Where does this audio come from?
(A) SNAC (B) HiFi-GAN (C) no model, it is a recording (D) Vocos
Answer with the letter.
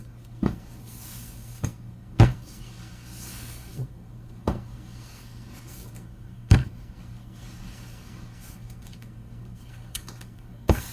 A